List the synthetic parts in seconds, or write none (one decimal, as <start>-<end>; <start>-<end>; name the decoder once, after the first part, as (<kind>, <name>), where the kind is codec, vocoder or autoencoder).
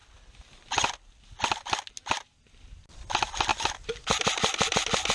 none